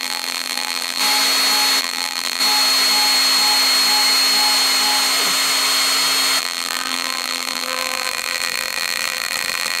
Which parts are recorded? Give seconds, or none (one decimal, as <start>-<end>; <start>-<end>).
1.0-1.8; 2.4-6.4

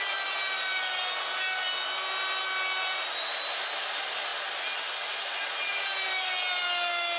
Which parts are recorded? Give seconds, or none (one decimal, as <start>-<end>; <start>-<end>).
0.0-7.2

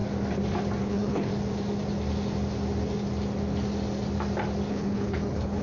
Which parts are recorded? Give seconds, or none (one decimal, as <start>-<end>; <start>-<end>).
0.0-0.8; 1.3-4.7

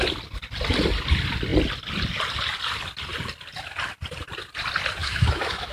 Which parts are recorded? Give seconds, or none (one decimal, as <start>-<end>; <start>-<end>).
0.0-5.0

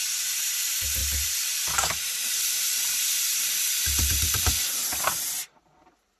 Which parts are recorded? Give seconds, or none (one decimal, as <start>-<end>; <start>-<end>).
none

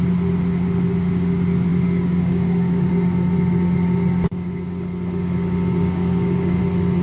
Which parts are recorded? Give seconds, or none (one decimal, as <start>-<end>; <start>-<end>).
0.0-1.7; 2.9-5.8; 6.6-7.0

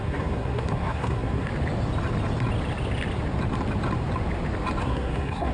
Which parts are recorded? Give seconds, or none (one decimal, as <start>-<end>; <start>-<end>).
1.5-4.8

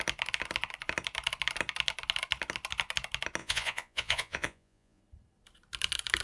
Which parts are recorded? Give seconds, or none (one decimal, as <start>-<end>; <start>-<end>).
0.0-3.4; 5.0-6.2